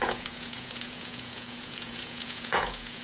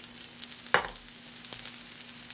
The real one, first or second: second